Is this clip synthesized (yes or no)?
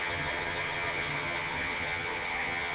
yes